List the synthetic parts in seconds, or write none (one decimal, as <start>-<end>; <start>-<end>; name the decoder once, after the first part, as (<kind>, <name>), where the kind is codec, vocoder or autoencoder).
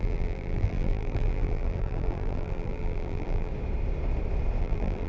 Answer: 0.0-3.5 (vocoder, BigVGAN v2); 4.6-5.1